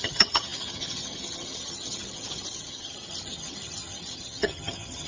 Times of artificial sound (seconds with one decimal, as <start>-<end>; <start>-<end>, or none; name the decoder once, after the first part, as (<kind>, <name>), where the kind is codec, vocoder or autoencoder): 0.0-5.1 (vocoder, HiFi-GAN)